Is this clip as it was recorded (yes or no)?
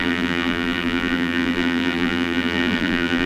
no